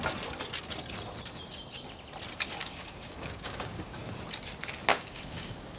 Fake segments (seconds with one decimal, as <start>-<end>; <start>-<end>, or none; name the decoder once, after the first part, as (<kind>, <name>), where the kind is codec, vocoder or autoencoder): 2.6-4.0 (codec, DAC); 4.9-5.8